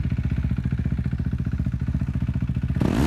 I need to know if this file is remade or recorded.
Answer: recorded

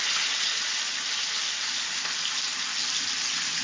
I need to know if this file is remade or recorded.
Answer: recorded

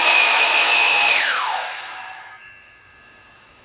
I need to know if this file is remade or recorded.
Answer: remade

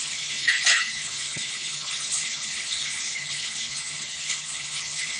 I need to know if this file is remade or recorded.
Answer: remade